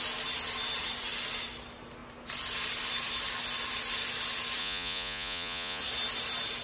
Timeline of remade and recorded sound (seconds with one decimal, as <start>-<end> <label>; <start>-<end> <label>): 0.0-4.6 recorded; 4.6-5.8 remade; 5.8-6.6 recorded